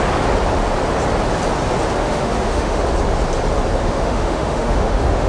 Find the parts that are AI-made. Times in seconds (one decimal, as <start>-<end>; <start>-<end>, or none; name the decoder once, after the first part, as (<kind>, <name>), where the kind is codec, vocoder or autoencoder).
2.0-2.8 (autoencoder, DAC-VAE); 3.8-5.3